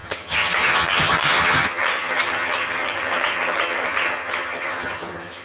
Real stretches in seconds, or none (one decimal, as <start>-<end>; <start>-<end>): none